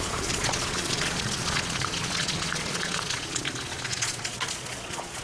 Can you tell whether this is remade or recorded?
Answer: remade